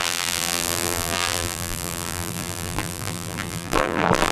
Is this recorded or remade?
remade